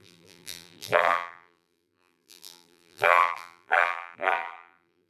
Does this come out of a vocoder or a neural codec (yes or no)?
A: yes